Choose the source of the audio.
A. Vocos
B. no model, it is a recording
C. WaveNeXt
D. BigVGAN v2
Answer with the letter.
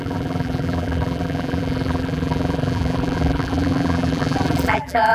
D